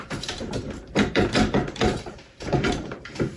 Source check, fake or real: fake